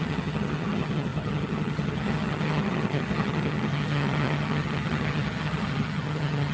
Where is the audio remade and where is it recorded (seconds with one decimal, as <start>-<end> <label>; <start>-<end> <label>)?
0.0-6.5 remade